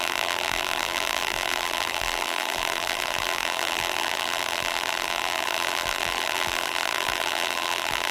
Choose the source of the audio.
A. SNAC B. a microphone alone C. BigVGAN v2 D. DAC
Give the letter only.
C